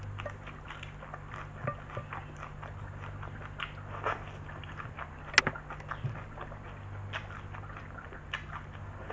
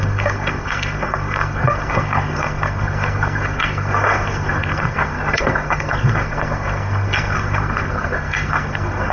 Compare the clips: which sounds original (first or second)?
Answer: first